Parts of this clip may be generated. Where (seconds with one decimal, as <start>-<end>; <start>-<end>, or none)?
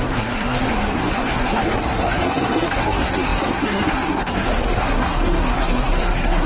0.0-6.5